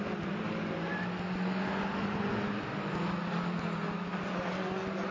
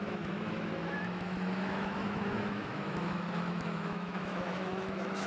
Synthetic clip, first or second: second